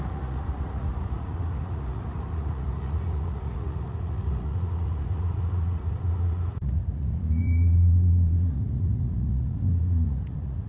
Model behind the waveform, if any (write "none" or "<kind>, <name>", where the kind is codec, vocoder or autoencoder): vocoder, Vocos